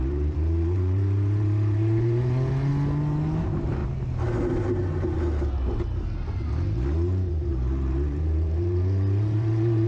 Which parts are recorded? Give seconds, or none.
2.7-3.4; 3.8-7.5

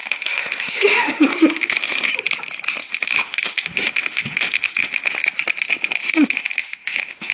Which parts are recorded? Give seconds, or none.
2.1-2.8; 5.1-6.0